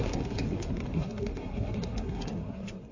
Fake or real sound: fake